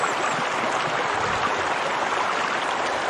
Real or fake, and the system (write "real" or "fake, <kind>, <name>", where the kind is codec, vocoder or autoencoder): real